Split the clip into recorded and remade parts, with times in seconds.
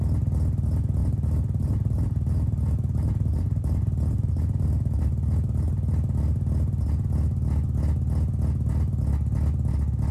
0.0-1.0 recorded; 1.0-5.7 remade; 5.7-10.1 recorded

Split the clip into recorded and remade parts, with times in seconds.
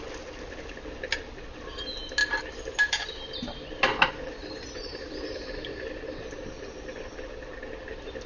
0.0-4.4 recorded; 4.4-5.6 remade; 5.6-8.3 recorded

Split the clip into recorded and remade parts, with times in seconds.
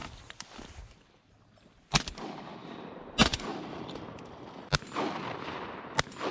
0.0-1.3 remade; 1.3-2.6 recorded; 2.6-4.0 remade; 4.0-6.3 recorded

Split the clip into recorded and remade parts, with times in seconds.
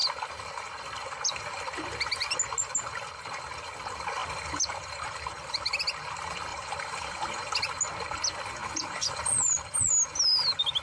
0.0-4.2 recorded; 4.2-5.8 remade; 5.8-6.5 recorded; 6.5-7.5 remade; 7.5-8.6 recorded; 8.6-9.9 remade; 9.9-10.8 recorded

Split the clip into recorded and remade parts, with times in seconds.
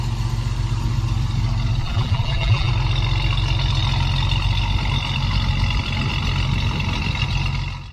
0.0-1.8 recorded; 1.8-2.7 remade; 2.7-7.9 recorded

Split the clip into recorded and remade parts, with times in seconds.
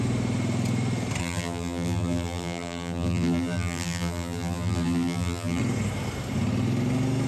0.0-1.2 recorded; 1.2-5.6 remade; 5.6-7.3 recorded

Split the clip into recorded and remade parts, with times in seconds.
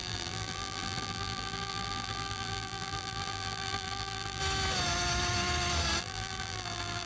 0.0-4.4 remade; 4.4-6.0 recorded; 6.0-7.1 remade